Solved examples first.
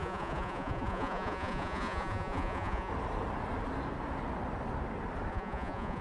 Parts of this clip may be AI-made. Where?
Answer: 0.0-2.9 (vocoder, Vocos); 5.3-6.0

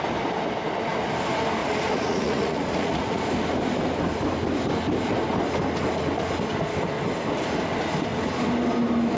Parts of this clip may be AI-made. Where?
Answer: 1.6-3.2 (vocoder, Vocos)

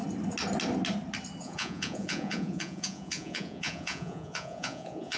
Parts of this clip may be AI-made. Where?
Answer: 1.4-5.2 (vocoder, Vocos)